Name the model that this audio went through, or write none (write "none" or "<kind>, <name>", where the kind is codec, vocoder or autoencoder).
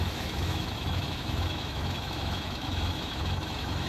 autoencoder, DAC-VAE